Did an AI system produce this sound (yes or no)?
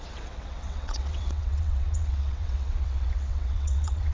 yes